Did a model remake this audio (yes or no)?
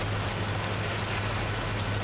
no